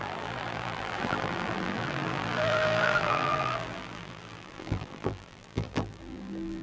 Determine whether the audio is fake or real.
fake